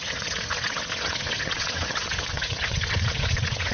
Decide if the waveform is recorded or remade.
remade